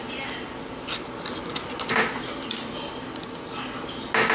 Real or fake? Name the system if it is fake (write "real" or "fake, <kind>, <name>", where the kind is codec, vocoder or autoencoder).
real